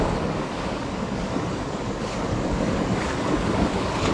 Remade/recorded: remade